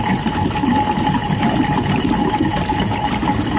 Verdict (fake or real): real